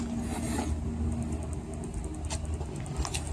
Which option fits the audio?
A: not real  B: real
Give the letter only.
B